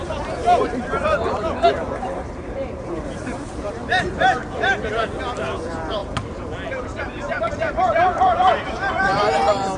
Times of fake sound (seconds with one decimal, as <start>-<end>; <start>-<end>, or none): 0.0-4.4; 5.2-6.0; 6.7-9.8